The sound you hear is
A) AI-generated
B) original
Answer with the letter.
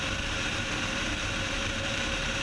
A